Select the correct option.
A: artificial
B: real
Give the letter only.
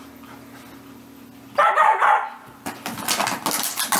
B